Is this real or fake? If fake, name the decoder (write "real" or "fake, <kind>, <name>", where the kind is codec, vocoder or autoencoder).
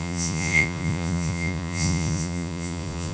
fake, vocoder, Vocos